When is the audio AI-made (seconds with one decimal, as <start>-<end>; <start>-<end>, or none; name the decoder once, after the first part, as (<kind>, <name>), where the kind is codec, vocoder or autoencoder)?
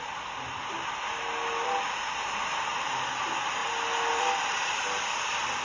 none